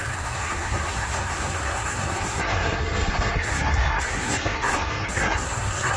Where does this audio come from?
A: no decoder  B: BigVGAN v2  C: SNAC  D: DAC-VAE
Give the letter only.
C